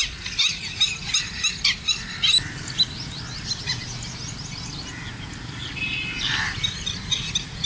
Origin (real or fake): real